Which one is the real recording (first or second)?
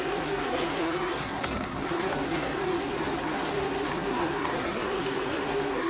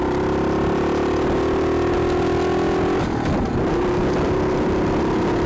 second